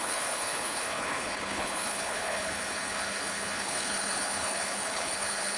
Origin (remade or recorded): remade